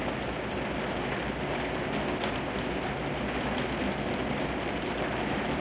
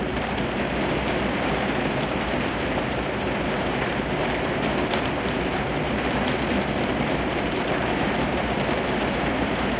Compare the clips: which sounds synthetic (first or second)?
second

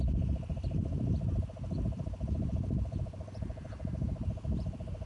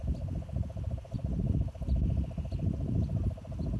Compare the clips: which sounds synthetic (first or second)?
first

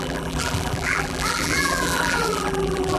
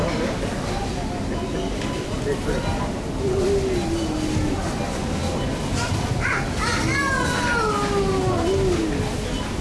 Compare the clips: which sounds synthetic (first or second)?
first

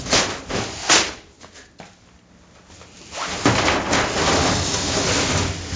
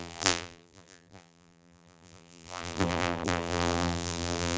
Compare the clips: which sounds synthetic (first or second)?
second